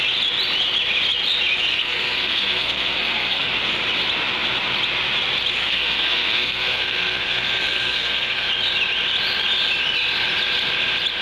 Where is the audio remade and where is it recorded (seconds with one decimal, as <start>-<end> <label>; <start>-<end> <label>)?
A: 0.0-1.7 recorded; 1.7-3.5 remade; 3.5-5.6 recorded; 5.6-8.5 remade; 8.5-11.2 recorded